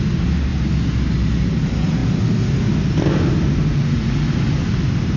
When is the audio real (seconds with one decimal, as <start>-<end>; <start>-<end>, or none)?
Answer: 0.0-5.2